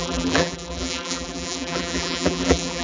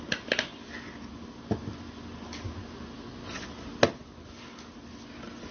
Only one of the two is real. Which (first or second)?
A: second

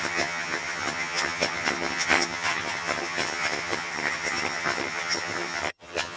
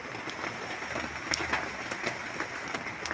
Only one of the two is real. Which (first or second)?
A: second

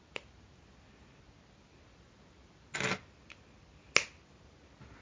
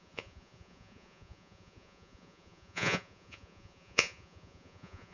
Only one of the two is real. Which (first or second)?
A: first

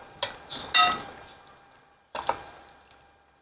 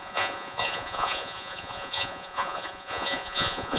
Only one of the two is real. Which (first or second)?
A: first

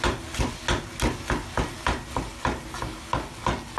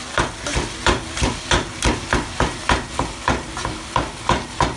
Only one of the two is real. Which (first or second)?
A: first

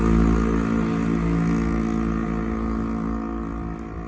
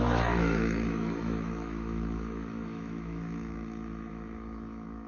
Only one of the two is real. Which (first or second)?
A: first